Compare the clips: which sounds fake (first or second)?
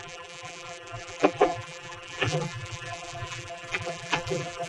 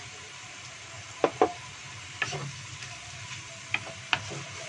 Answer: first